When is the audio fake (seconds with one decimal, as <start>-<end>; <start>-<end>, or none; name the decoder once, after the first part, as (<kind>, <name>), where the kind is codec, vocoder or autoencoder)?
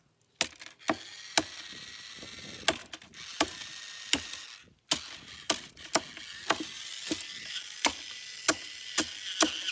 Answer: none